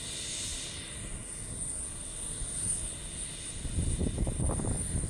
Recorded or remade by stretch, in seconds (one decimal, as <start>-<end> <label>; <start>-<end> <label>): 0.0-5.1 recorded